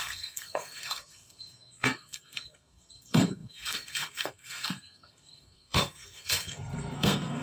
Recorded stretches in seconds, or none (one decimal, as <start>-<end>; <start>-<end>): none